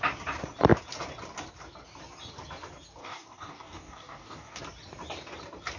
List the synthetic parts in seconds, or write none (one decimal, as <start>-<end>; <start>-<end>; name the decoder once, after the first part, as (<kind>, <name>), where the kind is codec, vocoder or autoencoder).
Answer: 3.0-4.6 (codec, DAC)